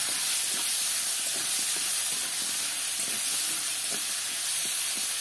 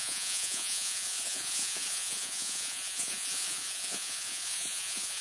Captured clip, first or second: first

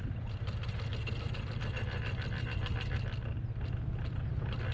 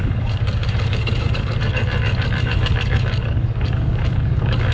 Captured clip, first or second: first